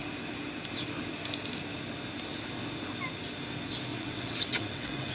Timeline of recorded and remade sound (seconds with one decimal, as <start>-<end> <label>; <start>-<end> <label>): 0.0-3.9 recorded; 3.9-5.1 remade